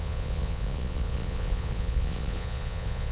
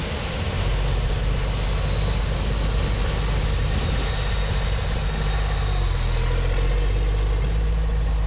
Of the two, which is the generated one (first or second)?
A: first